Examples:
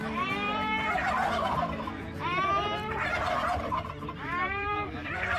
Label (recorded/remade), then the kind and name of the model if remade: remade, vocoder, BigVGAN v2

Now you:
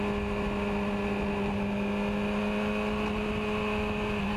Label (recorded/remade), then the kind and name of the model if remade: recorded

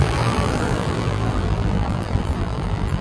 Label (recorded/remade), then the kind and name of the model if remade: remade, vocoder, BigVGAN v2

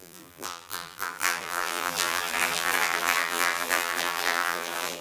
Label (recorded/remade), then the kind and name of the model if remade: remade, vocoder, BigVGAN v2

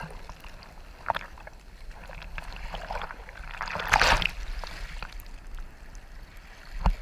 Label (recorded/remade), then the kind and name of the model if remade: recorded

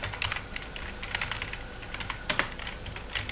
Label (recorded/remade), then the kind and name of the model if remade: recorded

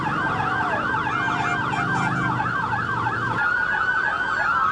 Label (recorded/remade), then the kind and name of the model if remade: recorded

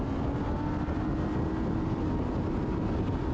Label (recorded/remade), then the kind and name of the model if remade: recorded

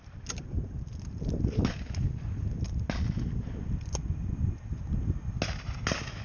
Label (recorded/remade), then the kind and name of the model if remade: recorded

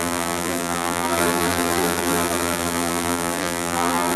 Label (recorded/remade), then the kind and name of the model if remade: remade, vocoder, BigVGAN v2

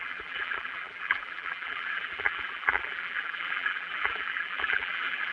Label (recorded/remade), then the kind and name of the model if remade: remade, vocoder, BigVGAN v2